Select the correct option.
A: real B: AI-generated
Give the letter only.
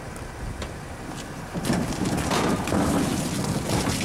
A